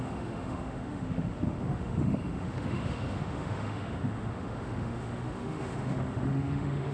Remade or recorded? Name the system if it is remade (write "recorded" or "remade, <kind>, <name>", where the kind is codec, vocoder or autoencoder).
remade, autoencoder, DAC-VAE